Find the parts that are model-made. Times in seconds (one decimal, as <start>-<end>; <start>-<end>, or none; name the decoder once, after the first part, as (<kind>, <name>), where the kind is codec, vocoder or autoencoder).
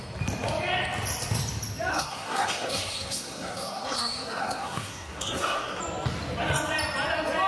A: 1.9-5.8 (codec, SNAC)